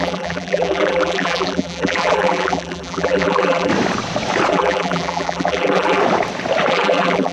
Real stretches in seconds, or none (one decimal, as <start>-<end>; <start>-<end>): 3.7-4.5; 6.0-6.7